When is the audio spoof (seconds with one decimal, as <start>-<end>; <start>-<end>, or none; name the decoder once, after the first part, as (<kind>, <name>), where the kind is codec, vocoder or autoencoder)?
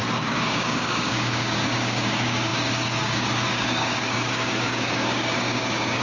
0.0-6.0 (codec, DAC)